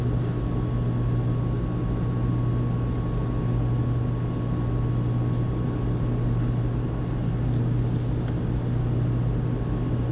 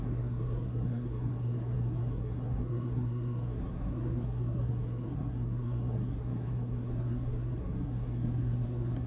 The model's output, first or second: second